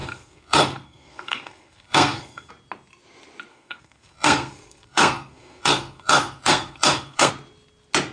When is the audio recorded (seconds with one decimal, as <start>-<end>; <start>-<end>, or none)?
2.5-3.5; 7.3-8.1